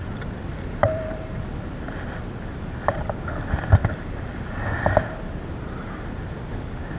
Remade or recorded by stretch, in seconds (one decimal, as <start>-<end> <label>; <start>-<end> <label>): 0.0-0.5 recorded; 0.5-1.4 remade; 1.4-3.8 recorded; 3.8-4.7 remade; 4.7-7.0 recorded